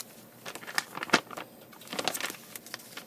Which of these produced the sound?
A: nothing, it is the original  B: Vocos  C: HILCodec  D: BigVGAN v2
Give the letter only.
A